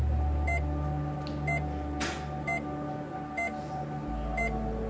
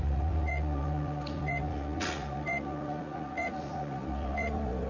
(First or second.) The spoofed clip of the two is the second